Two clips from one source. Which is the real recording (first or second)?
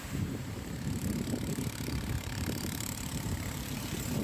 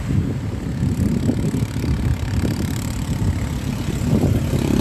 second